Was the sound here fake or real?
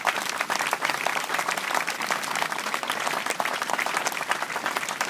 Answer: fake